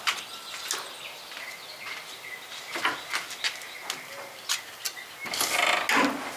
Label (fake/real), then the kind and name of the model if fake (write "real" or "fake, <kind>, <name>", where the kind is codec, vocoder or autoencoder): real